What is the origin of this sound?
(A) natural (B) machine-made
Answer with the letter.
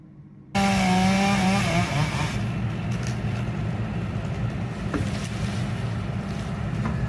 A